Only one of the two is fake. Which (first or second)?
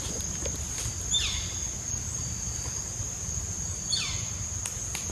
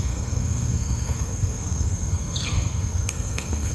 second